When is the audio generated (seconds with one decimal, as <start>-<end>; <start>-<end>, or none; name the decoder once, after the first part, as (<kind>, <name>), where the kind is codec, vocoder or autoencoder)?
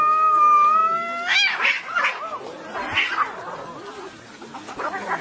none